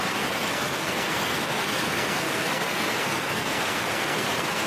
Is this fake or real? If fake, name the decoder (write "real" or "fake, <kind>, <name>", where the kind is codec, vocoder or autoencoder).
fake, codec, SNAC